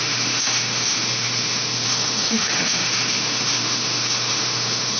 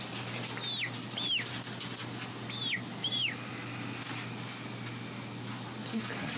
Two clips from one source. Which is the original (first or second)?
second